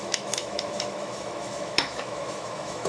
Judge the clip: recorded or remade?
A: remade